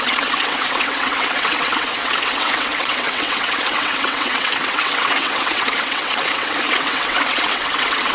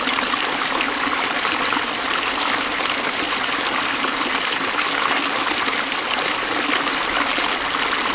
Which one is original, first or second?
second